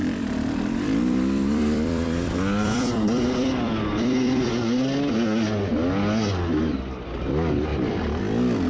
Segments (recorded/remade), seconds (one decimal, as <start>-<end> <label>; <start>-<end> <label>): 0.0-4.5 remade; 4.5-7.7 recorded; 7.7-8.2 remade; 8.2-8.7 recorded